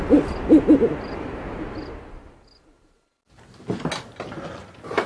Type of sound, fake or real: real